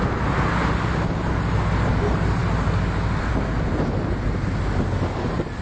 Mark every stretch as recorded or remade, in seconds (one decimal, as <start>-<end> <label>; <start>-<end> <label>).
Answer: 0.0-5.6 recorded